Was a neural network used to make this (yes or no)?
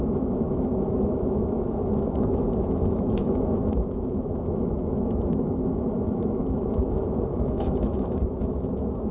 yes